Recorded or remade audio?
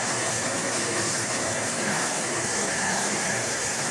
remade